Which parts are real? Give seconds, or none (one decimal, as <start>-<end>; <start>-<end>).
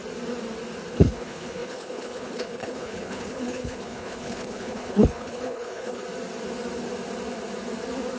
0.0-0.9; 6.0-8.2